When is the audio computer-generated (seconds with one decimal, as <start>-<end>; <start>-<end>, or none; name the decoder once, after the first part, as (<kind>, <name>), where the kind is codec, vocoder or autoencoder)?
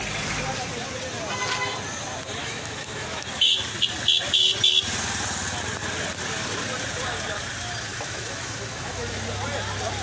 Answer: 2.4-3.5 (autoencoder, DAC-VAE); 7.9-9.1